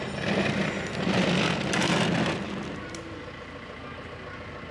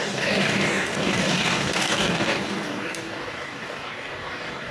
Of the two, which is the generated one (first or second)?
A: second